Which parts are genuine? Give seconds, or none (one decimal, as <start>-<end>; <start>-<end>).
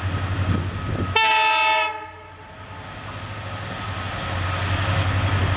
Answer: 0.0-5.6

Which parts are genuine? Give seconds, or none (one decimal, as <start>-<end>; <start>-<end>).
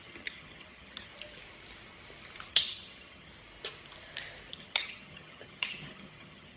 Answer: 1.1-2.5; 3.3-4.5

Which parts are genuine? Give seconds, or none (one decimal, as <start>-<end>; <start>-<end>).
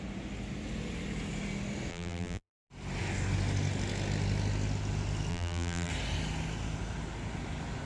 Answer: 0.0-1.9; 2.7-5.3; 5.9-7.9